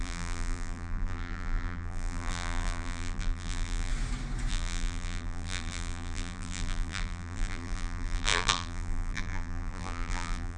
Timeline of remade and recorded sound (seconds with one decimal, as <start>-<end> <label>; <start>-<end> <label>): 0.0-3.9 remade; 3.9-4.5 recorded; 4.5-10.6 remade